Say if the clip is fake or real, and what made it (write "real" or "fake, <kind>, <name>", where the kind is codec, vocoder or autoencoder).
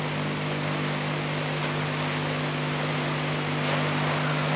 real